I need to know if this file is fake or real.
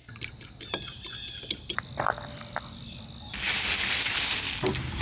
real